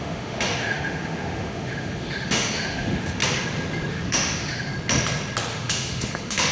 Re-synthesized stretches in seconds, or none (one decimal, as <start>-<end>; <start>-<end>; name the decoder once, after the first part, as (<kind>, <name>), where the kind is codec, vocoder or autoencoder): 0.0-3.2 (autoencoder, DAC-VAE); 3.9-4.7; 5.5-6.5

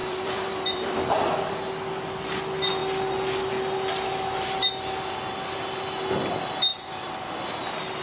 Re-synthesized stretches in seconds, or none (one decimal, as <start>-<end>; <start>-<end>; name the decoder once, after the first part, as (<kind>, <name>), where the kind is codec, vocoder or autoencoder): 0.0-1.1 (vocoder, BigVGAN v2); 6.7-7.4

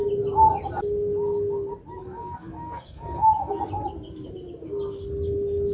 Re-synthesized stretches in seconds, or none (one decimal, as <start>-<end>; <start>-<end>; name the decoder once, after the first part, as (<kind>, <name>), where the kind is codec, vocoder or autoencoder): 2.0-3.6 (codec, DAC)

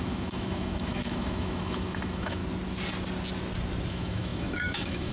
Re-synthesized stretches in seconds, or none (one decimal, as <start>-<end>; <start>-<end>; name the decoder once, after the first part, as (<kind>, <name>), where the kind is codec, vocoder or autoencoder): 0.0-2.4 (autoencoder, DAC-VAE); 3.9-5.1

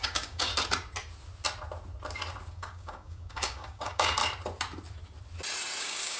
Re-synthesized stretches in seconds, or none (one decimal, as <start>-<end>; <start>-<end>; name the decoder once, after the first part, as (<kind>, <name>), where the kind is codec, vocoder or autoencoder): 0.0-0.5 (codec, DAC); 2.5-4.2; 5.8-6.2

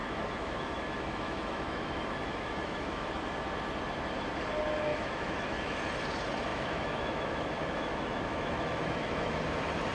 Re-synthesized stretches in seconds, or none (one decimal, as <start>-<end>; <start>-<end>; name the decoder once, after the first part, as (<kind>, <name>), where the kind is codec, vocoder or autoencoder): 0.0-3.1 (autoencoder, DAC-VAE); 4.9-5.8; 6.5-9.4